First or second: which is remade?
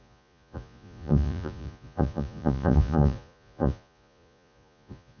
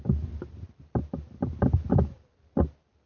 first